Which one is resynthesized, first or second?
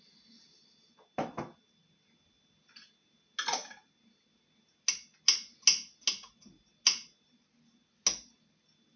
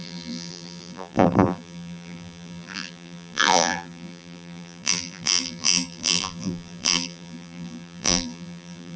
second